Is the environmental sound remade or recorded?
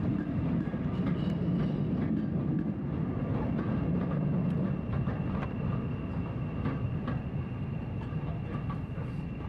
recorded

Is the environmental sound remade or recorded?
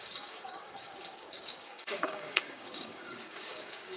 remade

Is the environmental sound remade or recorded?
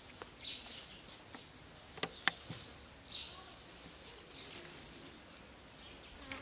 recorded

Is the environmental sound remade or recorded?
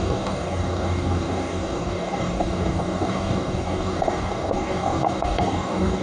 remade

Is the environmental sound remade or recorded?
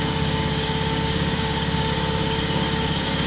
remade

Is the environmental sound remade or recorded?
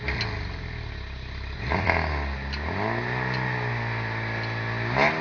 recorded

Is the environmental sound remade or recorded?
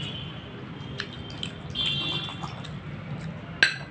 recorded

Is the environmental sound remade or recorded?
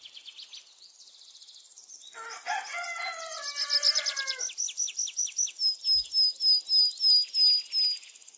recorded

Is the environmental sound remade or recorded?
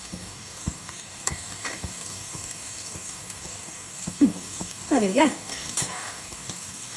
remade